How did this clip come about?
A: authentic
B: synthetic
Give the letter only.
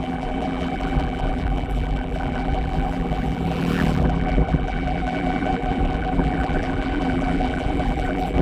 B